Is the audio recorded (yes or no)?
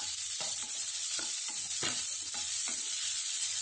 no